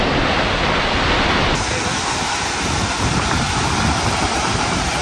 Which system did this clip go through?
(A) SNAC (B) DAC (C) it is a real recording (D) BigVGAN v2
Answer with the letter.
C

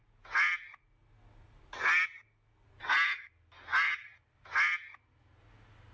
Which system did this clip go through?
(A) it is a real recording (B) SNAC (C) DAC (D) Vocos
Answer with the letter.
A